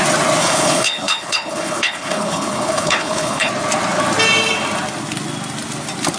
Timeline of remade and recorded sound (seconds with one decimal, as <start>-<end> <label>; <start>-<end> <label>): 0.0-0.4 recorded; 0.4-3.5 remade; 3.5-6.2 recorded